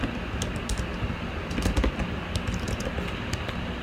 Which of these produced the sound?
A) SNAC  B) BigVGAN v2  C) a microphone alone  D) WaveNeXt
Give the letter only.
C